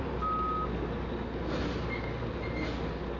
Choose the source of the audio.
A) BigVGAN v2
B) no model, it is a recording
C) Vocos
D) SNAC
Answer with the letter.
B